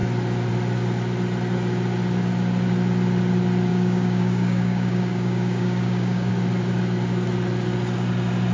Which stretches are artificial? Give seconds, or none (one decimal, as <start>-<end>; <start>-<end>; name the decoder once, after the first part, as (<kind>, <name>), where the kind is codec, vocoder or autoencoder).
3.7-6.3 (codec, DAC)